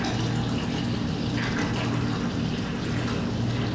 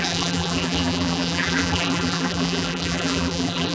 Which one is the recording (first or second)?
first